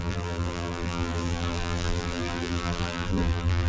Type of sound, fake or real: fake